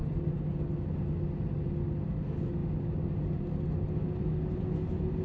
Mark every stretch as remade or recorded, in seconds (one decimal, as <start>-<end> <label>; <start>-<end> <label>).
0.0-5.2 recorded